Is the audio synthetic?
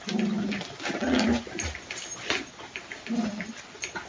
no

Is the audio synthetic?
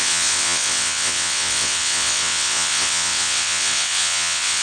yes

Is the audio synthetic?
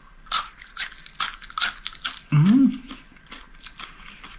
no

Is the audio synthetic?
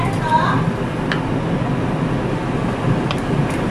no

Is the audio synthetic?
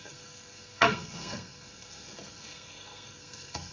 yes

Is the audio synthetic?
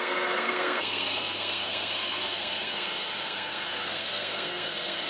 yes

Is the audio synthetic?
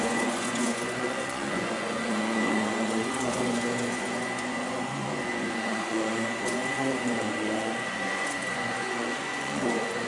yes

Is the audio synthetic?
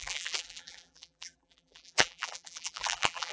yes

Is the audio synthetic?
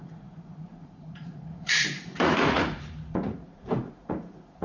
yes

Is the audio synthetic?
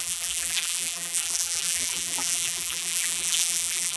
yes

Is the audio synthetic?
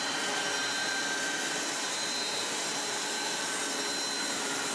no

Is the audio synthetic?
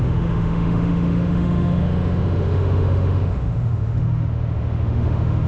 yes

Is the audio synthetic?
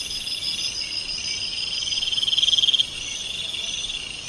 no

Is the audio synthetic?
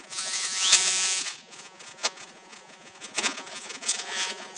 yes